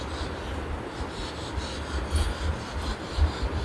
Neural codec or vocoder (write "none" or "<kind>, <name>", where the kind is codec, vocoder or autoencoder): none